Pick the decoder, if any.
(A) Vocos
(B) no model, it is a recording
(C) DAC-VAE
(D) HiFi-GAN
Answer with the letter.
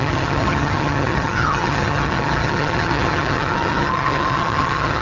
D